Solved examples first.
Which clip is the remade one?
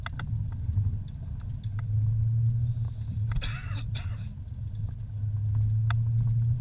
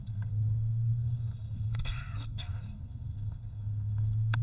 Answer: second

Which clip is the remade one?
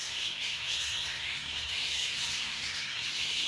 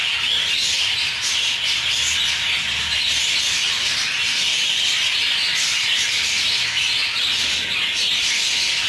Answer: first